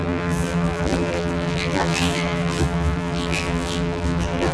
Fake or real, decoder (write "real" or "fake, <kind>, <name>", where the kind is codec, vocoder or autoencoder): fake, vocoder, BigVGAN v2